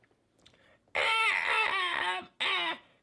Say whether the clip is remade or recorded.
recorded